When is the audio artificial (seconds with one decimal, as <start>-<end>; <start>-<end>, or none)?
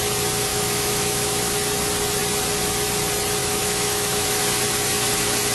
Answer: 0.5-1.5; 3.4-4.4